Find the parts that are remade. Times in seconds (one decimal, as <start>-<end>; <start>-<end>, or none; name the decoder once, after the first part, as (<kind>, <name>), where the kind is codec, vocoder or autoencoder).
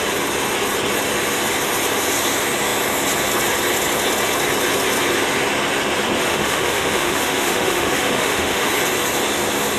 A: 6.3-8.7 (autoencoder, DAC-VAE)